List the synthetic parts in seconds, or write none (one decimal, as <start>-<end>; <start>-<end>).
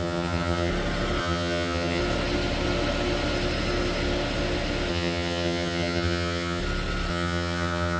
0.0-0.7; 1.2-2.0; 4.9-6.6; 7.1-8.0